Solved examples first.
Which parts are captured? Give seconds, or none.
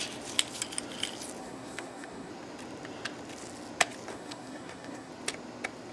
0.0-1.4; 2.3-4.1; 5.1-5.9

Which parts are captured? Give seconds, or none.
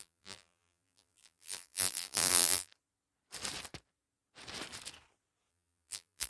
2.7-5.5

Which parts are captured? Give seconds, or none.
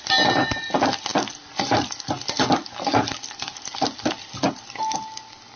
0.0-5.6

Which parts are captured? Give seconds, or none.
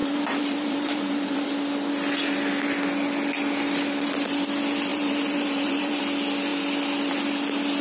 1.5-4.9; 6.0-7.8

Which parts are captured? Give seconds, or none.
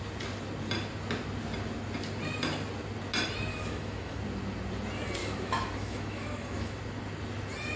0.0-3.5; 4.2-5.2; 6.8-7.8